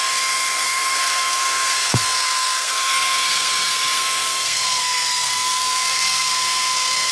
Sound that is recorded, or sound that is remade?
remade